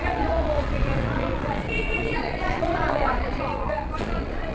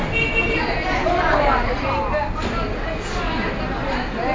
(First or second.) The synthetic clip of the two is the first